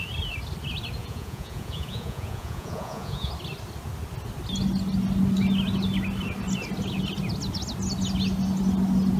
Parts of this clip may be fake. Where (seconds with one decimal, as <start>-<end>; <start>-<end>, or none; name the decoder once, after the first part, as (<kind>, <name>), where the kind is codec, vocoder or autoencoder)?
1.0-3.3 (vocoder, Vocos)